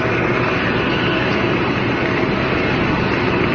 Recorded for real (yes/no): yes